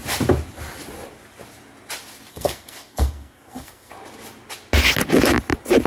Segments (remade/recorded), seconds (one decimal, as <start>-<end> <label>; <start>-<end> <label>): 0.0-2.3 recorded; 2.3-3.9 remade; 3.9-5.9 recorded